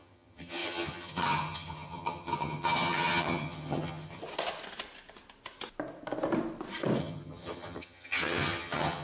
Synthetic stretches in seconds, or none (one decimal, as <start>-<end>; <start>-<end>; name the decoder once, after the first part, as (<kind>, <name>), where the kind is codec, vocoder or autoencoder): 0.0-4.2 (vocoder, HiFi-GAN); 7.0-9.0